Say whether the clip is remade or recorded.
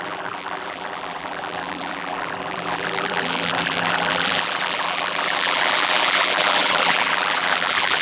remade